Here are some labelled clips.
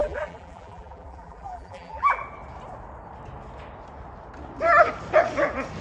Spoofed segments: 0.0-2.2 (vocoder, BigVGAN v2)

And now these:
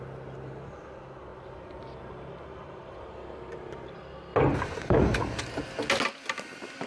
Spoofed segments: 1.3-4.0 (vocoder, BigVGAN v2); 4.5-5.6

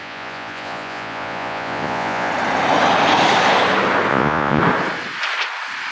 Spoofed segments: 0.0-2.3 (vocoder, Vocos); 4.1-4.6

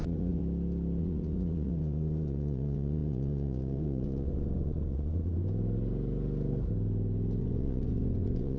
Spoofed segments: 0.0-0.4 (vocoder, Vocos); 1.0-5.4; 7.4-8.6

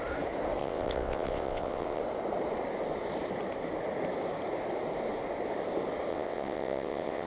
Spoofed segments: 0.6-2.0 (vocoder, WaveNeXt); 6.1-7.3

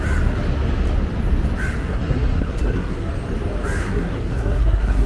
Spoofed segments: 1.8-3.1 (codec, SNAC); 3.8-5.1

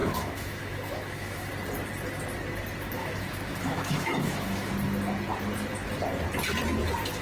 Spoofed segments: 0.0-1.5 (autoencoder, DAC-VAE); 3.0-4.7